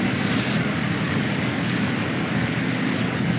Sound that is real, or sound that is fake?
fake